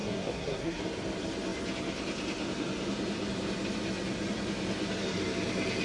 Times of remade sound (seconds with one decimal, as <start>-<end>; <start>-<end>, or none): 0.0-0.8